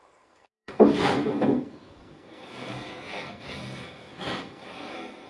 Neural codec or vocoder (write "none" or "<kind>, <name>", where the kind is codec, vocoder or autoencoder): codec, SNAC